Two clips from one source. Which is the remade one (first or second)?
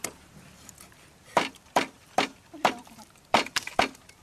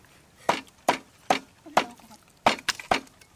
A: first